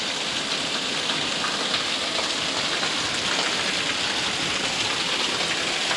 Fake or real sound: real